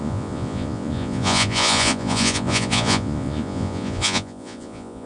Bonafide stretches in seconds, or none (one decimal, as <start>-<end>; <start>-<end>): none